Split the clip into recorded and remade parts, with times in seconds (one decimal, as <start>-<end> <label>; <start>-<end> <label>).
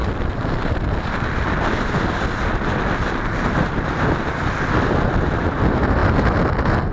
0.0-6.9 recorded